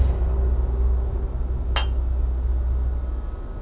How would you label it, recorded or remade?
recorded